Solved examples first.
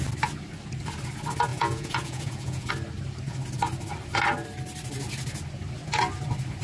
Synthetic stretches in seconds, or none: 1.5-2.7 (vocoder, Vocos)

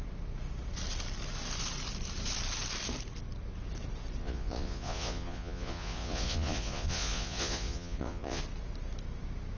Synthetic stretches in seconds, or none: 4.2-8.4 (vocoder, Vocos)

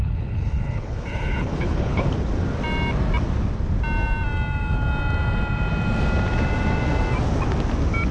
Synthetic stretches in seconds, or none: 0.0-2.1 (codec, HILCodec)

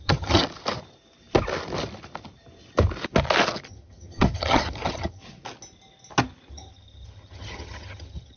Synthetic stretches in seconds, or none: 0.0-0.4 (vocoder, HiFi-GAN); 3.7-5.2; 6.5-8.4

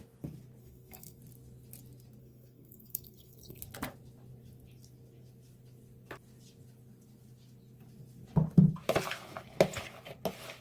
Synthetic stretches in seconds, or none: 0.6-1.2 (codec, SNAC); 2.2-3.6

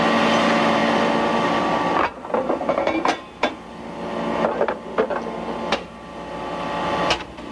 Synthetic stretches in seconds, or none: none

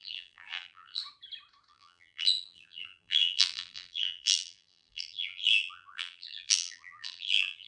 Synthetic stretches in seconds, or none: 0.0-1.0 (vocoder, BigVGAN v2); 1.7-7.7

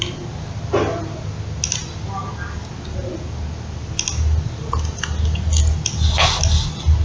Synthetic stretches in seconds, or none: none